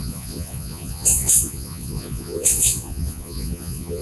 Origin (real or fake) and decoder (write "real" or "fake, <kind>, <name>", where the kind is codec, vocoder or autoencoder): fake, vocoder, Vocos